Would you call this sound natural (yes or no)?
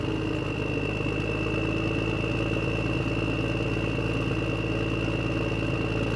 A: yes